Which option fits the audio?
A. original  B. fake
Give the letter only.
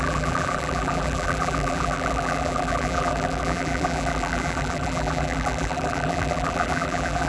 B